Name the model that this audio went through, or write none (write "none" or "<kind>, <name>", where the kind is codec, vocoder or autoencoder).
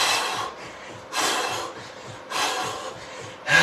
none